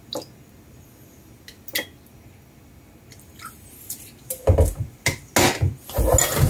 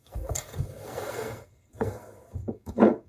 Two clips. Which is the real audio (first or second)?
first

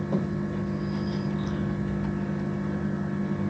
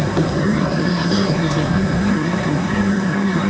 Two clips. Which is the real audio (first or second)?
first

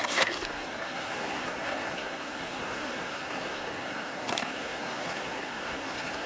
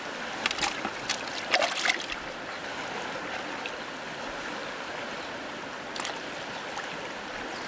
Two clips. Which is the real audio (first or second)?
second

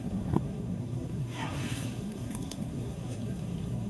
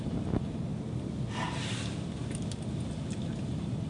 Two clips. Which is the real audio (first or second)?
second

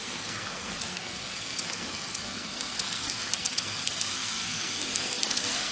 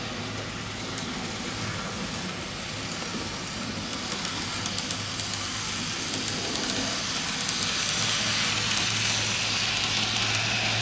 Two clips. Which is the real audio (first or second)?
second